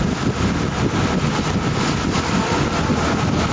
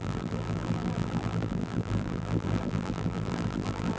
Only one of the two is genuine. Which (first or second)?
first